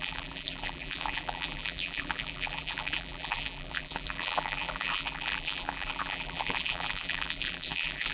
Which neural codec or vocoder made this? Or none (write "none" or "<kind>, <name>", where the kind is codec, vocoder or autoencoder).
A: vocoder, BigVGAN v2